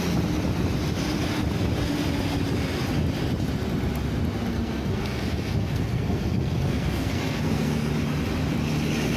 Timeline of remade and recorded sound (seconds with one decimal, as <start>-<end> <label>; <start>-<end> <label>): 0.0-4.5 recorded; 4.5-7.9 remade; 7.9-9.2 recorded